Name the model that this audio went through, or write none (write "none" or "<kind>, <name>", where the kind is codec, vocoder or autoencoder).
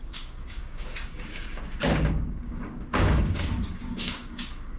codec, DAC